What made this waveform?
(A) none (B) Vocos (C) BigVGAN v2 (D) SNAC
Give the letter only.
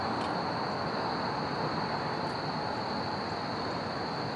A